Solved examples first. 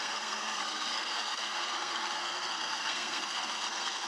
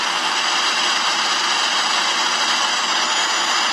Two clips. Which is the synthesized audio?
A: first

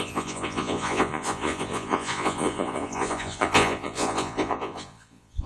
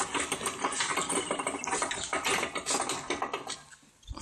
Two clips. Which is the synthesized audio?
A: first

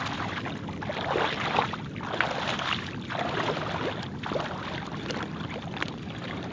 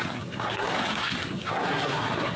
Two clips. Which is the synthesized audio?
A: second